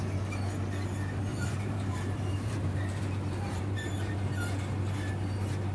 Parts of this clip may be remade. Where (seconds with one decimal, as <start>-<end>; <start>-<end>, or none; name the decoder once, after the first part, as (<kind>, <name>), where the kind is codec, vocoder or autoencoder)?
1.3-4.1 (vocoder, BigVGAN v2)